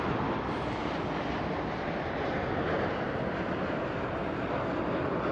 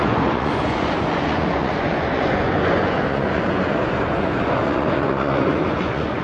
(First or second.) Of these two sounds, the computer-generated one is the second